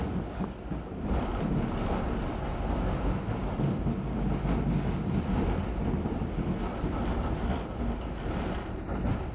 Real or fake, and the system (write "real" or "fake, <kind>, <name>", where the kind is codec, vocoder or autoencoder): real